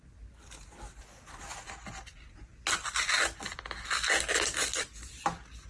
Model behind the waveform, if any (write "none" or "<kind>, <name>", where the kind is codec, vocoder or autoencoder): none